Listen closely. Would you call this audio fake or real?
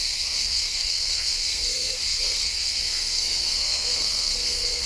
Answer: fake